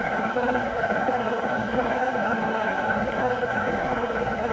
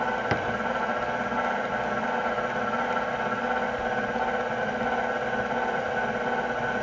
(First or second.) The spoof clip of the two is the first